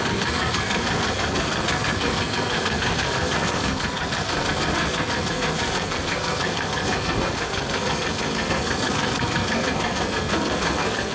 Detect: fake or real fake